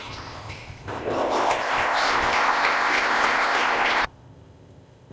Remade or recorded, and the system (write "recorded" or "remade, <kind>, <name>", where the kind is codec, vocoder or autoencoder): remade, codec, ZipCodec